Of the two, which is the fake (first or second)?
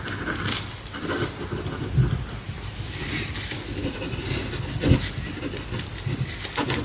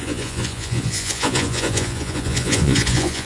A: second